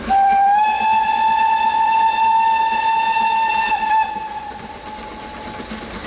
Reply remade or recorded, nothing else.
recorded